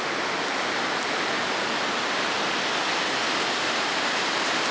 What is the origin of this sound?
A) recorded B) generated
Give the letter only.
A